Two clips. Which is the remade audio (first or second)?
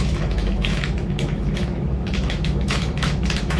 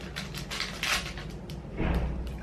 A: first